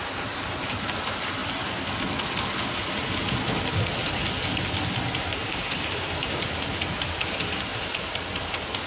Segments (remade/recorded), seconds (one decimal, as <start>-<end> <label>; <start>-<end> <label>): 0.0-1.4 remade; 1.4-5.2 recorded; 5.2-7.7 remade; 7.7-8.4 recorded; 8.4-8.9 remade

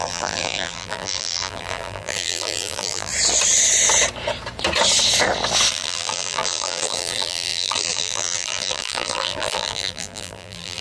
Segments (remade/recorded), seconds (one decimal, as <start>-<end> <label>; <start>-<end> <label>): 0.0-3.1 remade; 3.1-5.7 recorded; 5.7-10.8 remade

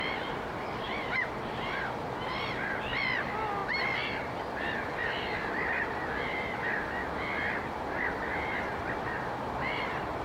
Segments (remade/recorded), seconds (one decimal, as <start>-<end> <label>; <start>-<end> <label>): 0.0-10.2 recorded